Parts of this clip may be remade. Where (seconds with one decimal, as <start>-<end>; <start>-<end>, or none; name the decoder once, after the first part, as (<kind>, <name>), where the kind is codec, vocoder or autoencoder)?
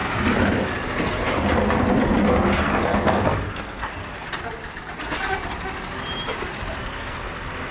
2.6-3.9 (codec, SNAC); 6.8-7.7